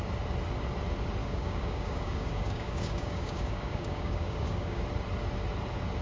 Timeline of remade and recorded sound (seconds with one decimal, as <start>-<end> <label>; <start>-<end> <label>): 0.0-1.2 recorded; 1.2-4.8 remade; 4.8-6.0 recorded